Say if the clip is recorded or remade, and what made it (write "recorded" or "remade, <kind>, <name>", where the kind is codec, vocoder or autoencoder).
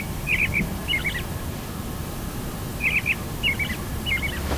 recorded